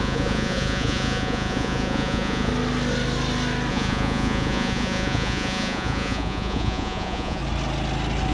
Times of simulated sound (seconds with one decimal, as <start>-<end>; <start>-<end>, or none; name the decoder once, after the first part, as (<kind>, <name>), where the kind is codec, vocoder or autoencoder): 0.0-2.5 (vocoder, Vocos); 3.7-7.4